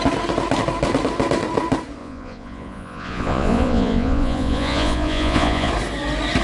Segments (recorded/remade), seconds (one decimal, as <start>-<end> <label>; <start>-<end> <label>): 0.0-2.0 recorded; 2.0-5.7 remade; 5.7-6.4 recorded